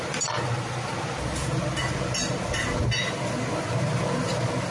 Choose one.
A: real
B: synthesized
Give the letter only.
A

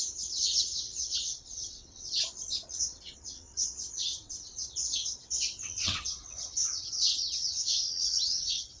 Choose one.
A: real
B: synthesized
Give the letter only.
B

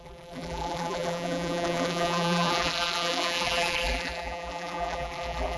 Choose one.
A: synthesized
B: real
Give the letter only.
A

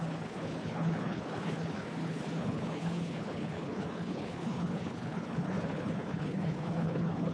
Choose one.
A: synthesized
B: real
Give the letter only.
A